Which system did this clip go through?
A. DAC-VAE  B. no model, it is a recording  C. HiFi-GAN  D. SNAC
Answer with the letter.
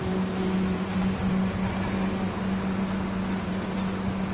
B